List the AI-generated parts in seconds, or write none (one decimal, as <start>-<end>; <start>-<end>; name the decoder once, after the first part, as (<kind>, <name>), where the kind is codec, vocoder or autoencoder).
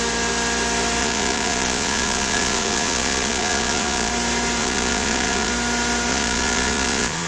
1.0-4.1 (vocoder, Vocos); 4.6-5.5; 6.1-7.3